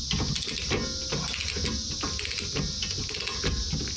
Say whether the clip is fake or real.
real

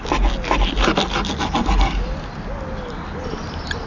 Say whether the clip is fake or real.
real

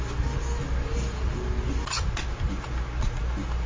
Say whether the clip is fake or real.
real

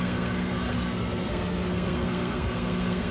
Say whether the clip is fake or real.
fake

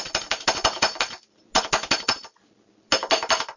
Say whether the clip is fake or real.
real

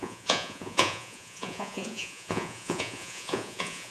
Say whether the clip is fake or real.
fake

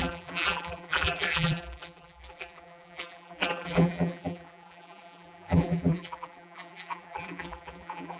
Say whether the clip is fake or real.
fake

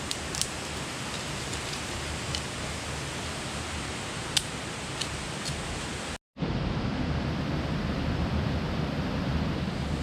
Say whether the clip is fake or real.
real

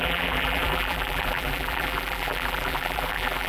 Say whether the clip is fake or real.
fake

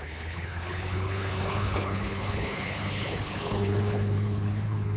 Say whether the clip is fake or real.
fake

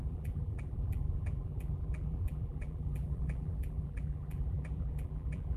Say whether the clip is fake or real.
fake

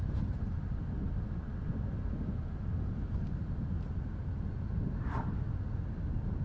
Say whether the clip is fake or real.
real